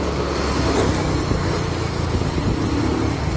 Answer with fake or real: real